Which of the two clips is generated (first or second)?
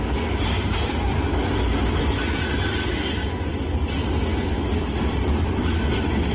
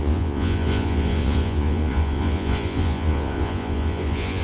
second